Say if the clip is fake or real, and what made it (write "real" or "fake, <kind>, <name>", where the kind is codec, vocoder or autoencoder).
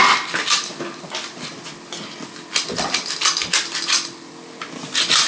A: real